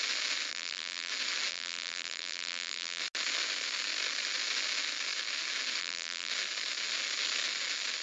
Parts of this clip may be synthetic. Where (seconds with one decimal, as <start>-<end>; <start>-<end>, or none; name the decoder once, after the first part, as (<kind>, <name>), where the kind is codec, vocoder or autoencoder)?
0.5-1.1 (vocoder, BigVGAN v2); 1.5-3.0; 5.8-6.3